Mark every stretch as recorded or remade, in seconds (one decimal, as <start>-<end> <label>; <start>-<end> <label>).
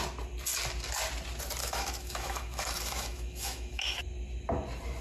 0.0-1.6 recorded; 1.6-4.0 remade; 4.0-5.0 recorded